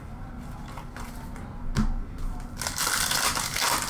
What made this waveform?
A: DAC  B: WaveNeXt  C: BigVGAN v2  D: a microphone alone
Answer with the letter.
D